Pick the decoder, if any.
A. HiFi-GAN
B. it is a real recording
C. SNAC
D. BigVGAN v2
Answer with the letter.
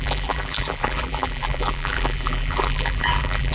D